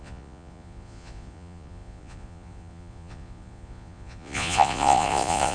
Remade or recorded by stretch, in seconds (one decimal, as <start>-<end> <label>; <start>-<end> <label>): 0.0-5.5 remade